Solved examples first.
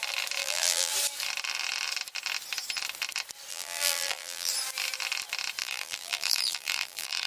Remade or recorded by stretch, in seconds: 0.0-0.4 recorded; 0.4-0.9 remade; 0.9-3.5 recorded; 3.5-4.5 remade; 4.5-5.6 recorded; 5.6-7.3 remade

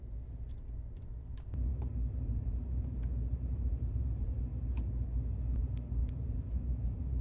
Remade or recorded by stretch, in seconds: 0.0-4.5 remade; 4.5-5.6 recorded; 5.6-7.2 remade

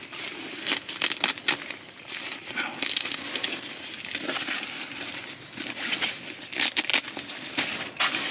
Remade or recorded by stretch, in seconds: 0.0-8.3 recorded